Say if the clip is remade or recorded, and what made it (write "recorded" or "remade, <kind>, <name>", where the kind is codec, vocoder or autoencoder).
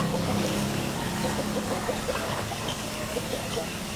remade, codec, DAC